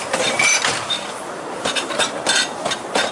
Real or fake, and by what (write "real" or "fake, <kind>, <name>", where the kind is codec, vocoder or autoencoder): fake, vocoder, BigVGAN v2